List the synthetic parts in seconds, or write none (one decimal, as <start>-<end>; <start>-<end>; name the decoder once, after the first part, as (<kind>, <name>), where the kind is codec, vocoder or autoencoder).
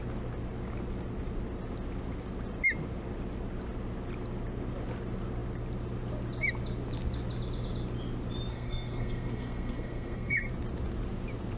8.5-10.5 (codec, SNAC)